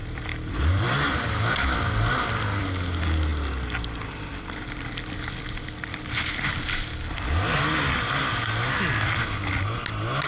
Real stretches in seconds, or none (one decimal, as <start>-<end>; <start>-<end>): 2.6-10.3